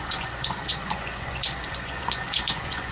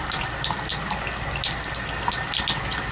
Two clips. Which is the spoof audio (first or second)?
first